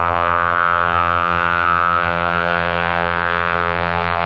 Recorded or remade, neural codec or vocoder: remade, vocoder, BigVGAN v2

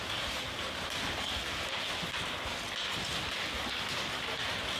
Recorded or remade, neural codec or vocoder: recorded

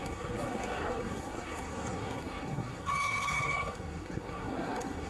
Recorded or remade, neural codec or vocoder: remade, codec, SNAC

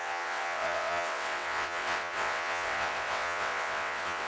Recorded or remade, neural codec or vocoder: remade, vocoder, WaveNeXt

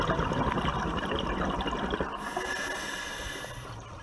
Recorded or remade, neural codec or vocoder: recorded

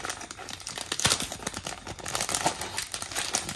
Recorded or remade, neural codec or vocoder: recorded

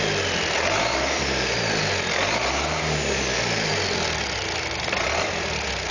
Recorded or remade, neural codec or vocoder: recorded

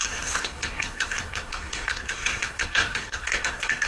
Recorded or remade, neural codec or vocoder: remade, codec, SNAC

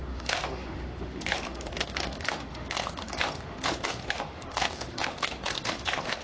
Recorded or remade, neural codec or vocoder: remade, autoencoder, DAC-VAE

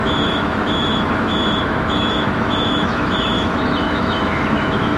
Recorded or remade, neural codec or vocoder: remade, autoencoder, DAC-VAE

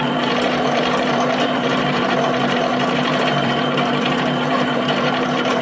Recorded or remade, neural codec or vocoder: remade, vocoder, BigVGAN v2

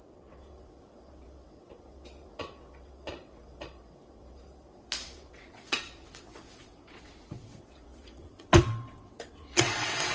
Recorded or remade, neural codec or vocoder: remade, vocoder, WaveNeXt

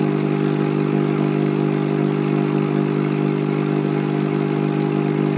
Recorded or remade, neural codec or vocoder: recorded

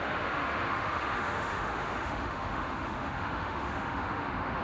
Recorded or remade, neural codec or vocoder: remade, autoencoder, DAC-VAE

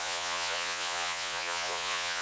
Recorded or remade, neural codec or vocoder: remade, vocoder, Vocos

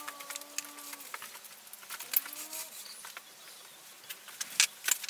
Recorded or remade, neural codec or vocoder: recorded